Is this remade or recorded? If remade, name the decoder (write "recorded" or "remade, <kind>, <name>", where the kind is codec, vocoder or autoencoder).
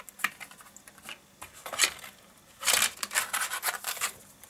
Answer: recorded